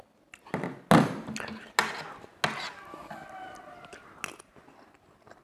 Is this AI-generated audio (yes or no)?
no